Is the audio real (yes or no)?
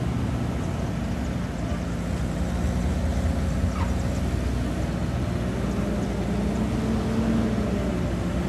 yes